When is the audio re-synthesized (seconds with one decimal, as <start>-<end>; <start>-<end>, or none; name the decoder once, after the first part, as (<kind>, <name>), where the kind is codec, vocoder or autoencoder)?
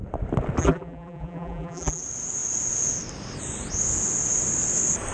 0.6-2.0 (vocoder, BigVGAN v2)